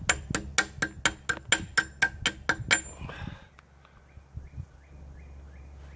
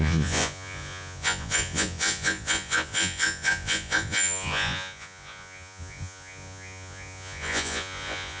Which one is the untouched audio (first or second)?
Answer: first